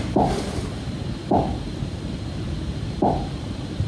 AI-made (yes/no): yes